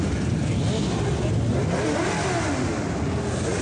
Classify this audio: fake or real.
real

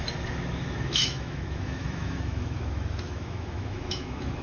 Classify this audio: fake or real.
fake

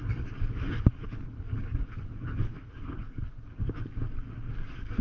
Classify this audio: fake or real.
fake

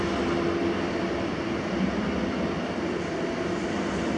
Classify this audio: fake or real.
real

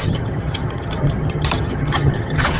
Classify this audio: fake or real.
fake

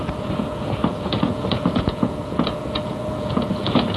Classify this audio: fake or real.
fake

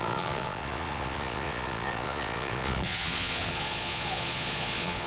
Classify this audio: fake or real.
fake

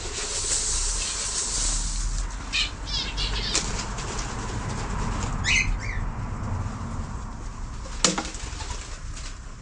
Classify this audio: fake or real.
real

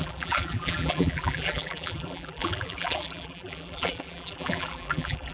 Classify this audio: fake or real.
fake